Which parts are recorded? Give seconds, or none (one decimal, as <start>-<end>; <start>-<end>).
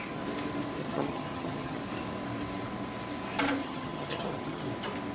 0.0-0.8; 1.8-3.6; 4.6-5.1